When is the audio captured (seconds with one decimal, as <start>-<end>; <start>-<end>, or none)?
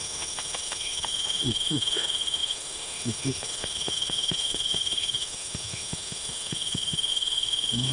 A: none